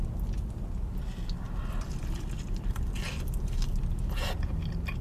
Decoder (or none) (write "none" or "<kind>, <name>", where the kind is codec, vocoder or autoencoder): none